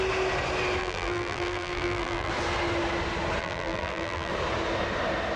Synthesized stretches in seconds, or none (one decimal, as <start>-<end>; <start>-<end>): 0.8-2.3; 3.4-4.3